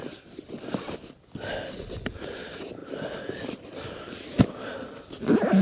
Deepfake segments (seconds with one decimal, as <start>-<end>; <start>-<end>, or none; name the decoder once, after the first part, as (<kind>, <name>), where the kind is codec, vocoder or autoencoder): none

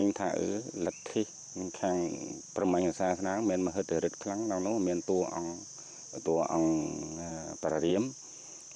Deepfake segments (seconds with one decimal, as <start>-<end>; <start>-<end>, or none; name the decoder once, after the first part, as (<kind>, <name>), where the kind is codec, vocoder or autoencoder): 0.0-0.6 (autoencoder, DAC-VAE); 7.3-7.9

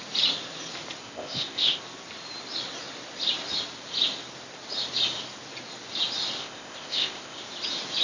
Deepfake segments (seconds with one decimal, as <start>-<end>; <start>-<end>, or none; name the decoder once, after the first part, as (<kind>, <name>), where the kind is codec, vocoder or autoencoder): 1.0-1.8 (codec, ZipCodec); 6.4-7.4